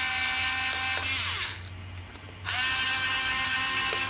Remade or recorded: recorded